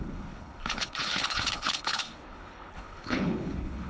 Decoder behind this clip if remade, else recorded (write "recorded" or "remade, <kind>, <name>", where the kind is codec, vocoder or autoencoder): remade, codec, HILCodec